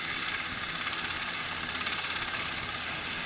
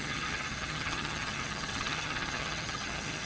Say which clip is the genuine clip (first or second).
first